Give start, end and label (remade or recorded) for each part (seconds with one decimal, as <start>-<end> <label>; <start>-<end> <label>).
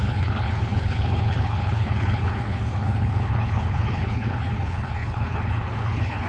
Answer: 0.0-6.3 remade